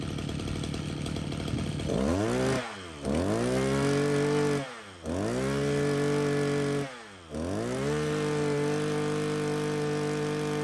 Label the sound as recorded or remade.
recorded